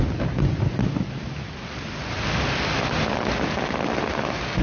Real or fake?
real